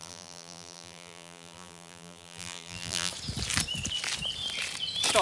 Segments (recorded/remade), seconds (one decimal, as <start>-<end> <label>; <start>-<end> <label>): 0.0-3.1 remade; 3.1-5.2 recorded

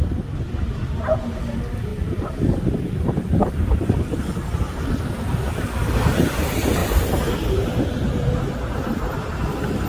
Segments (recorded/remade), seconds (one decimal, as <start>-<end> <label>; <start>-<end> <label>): 0.0-1.9 recorded; 1.9-5.1 remade; 5.1-6.8 recorded; 6.8-7.8 remade; 7.8-9.9 recorded

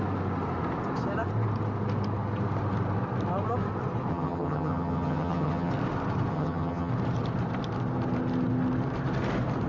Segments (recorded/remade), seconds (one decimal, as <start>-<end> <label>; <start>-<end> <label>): 0.0-4.1 recorded; 4.1-5.7 remade; 5.7-6.3 recorded; 6.3-6.9 remade; 6.9-9.7 recorded

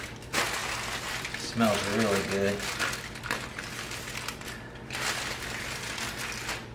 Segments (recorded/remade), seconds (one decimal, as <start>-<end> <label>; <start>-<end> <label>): 0.0-6.7 recorded

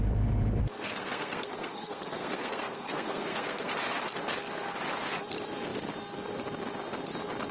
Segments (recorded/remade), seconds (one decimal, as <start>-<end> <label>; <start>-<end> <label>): 0.0-0.6 recorded; 0.6-3.7 remade; 3.7-7.5 recorded

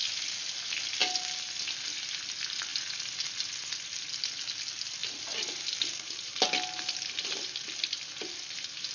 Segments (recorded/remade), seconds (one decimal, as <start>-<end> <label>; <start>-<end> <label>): 0.0-8.9 recorded

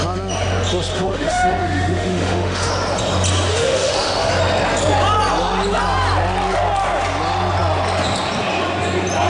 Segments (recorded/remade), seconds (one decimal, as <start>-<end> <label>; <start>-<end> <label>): 0.0-0.9 recorded; 0.9-2.7 remade; 2.7-3.5 recorded; 3.5-4.3 remade; 4.3-9.3 recorded